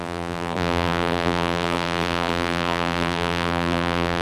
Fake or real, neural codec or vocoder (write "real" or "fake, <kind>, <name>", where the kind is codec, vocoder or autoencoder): fake, vocoder, BigVGAN v2